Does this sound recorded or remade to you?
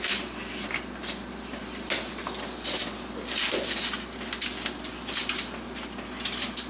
recorded